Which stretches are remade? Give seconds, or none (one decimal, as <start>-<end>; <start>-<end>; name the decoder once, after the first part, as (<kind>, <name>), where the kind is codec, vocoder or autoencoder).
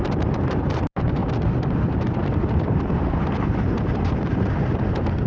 0.0-1.2 (vocoder, BigVGAN v2); 1.9-5.3